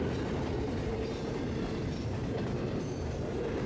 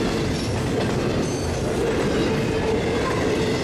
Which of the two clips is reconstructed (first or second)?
first